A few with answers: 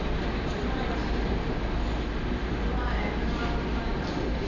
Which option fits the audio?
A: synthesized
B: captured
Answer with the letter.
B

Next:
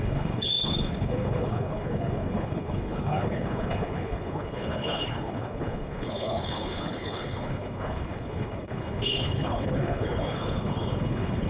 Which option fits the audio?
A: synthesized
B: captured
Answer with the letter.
A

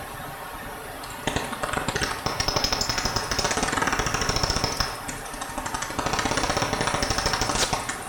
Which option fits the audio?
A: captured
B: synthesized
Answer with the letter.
A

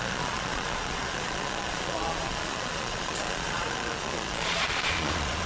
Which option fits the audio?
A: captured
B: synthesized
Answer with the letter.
B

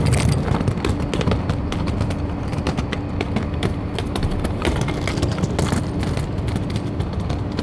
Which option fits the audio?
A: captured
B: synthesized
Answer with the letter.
A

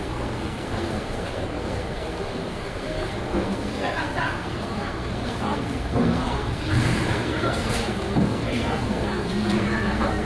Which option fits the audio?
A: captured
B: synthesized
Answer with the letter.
B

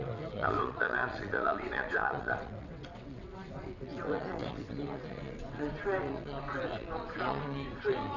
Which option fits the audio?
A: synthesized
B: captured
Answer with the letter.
A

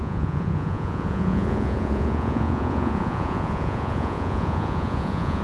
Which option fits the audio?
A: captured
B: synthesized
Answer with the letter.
B